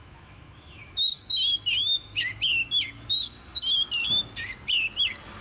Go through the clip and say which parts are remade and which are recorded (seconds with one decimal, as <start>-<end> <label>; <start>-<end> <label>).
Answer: 0.0-1.3 remade; 1.3-1.8 recorded; 1.8-2.7 remade; 2.7-5.4 recorded